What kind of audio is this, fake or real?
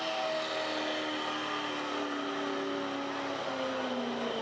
real